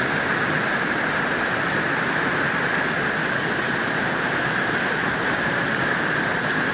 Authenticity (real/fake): real